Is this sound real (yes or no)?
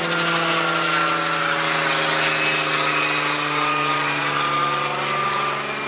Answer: yes